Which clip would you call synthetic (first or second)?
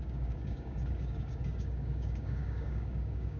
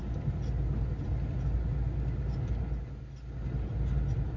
first